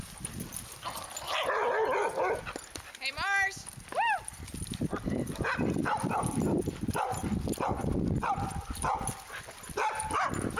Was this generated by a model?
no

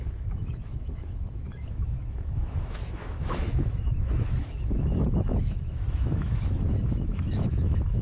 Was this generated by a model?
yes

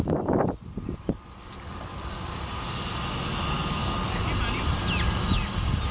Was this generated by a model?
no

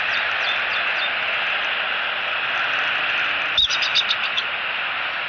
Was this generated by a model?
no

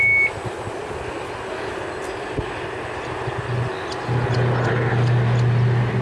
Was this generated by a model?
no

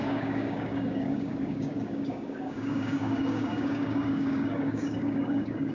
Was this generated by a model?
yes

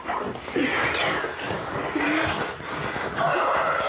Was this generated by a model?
no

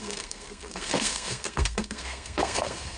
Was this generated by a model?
yes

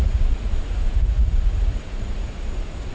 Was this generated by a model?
yes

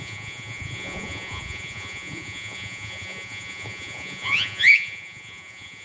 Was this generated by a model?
yes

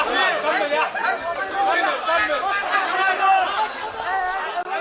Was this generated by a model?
no